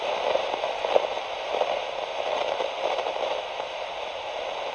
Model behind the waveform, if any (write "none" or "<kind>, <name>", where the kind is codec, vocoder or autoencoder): none